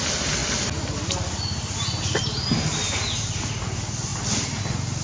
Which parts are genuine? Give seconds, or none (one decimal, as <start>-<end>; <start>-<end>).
0.0-5.0